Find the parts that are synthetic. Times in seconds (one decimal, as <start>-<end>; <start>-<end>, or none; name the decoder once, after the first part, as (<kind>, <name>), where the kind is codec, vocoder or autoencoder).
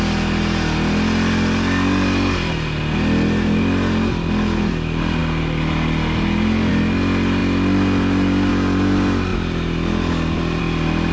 none